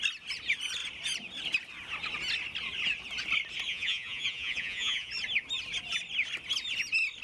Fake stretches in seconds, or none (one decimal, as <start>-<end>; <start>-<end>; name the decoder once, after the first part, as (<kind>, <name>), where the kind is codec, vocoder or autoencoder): 3.7-5.1 (vocoder, Vocos)